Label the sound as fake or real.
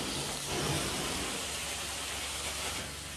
real